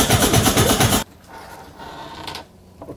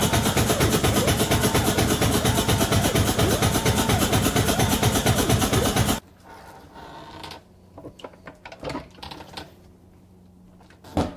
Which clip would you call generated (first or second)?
first